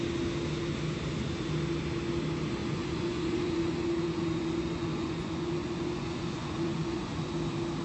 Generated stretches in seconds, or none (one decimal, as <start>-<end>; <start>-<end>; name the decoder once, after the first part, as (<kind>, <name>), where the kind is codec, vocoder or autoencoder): 2.6-7.3 (vocoder, Vocos)